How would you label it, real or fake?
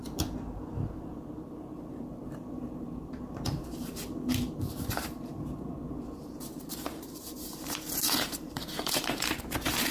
fake